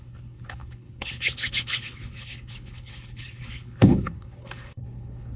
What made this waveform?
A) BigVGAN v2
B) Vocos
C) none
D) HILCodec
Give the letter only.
D